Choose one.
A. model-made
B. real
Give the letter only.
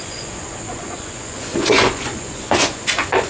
A